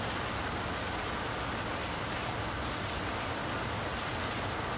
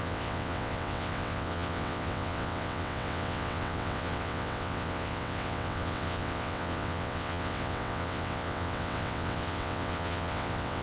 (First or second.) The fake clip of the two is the second